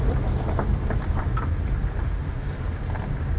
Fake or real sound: real